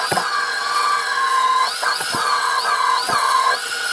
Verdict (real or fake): fake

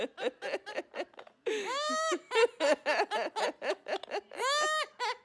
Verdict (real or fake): real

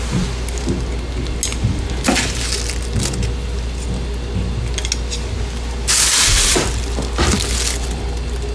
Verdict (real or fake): real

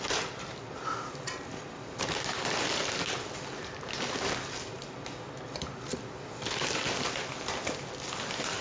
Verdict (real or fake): real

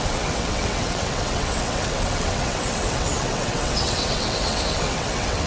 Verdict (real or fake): fake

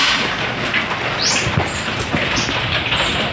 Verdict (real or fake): real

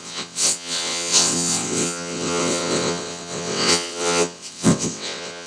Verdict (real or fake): fake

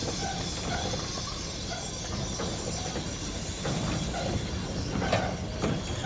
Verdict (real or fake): real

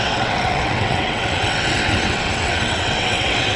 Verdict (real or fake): fake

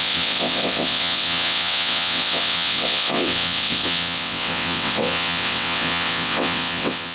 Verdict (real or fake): fake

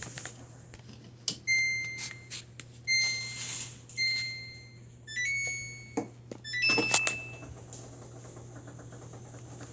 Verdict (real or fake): real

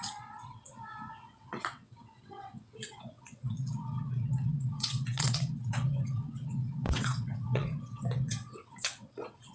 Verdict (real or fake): fake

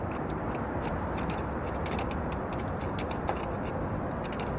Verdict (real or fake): real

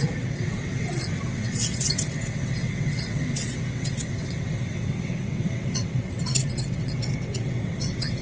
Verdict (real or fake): fake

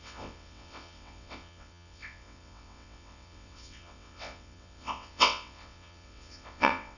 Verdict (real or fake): fake